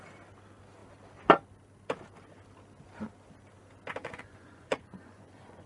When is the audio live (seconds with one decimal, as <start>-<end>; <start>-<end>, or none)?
0.0-4.0

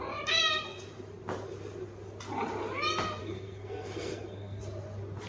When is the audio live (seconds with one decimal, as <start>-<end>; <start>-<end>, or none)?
0.0-3.2; 4.6-5.3